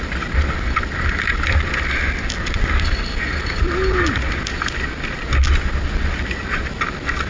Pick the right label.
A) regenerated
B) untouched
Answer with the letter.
B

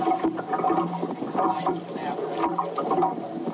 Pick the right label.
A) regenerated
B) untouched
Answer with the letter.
B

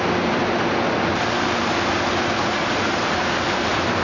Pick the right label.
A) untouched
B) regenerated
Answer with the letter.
A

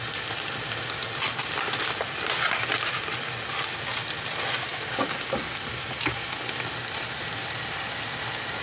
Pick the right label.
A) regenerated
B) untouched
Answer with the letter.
B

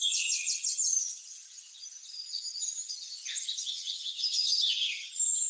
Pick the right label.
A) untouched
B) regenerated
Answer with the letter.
B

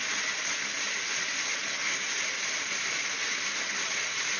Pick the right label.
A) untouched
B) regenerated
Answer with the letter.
A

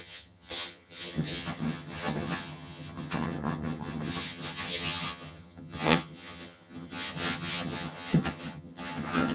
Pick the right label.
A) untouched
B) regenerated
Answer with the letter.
B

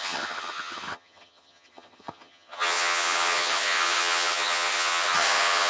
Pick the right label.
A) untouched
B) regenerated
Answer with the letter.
B